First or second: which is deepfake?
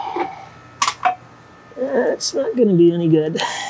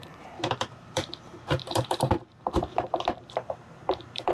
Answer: second